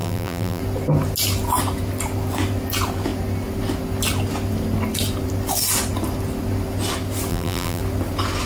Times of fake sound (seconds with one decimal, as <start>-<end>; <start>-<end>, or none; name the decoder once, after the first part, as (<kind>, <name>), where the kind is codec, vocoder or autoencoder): 0.0-0.6 (vocoder, BigVGAN v2); 7.3-7.8